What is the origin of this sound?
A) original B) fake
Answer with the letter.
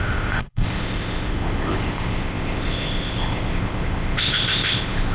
B